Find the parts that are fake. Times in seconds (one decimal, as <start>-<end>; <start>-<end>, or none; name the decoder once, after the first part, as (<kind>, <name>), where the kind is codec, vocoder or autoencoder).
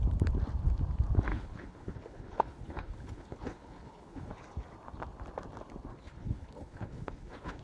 1.3-4.3 (codec, HILCodec); 5.9-7.6